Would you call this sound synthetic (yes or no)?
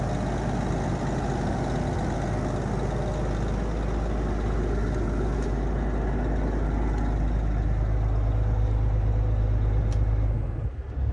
no